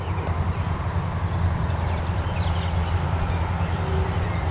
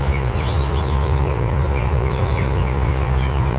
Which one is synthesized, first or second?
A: second